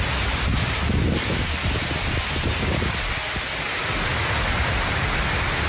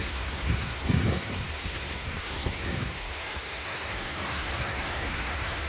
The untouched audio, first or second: first